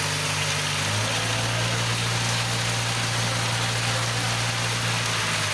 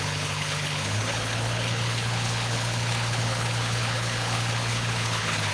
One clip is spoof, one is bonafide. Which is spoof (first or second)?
second